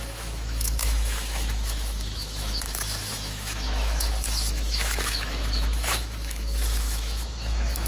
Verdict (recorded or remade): remade